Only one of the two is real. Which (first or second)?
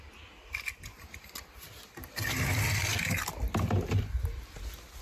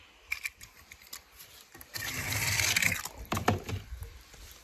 first